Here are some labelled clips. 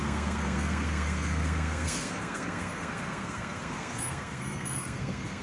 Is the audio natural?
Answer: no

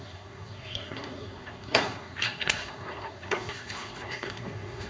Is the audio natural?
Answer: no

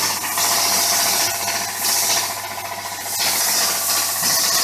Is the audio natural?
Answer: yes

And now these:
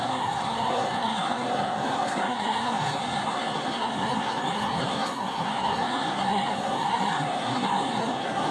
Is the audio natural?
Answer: no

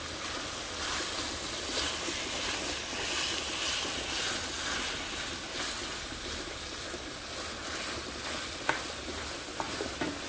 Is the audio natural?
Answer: yes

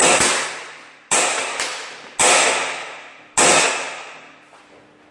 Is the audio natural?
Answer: yes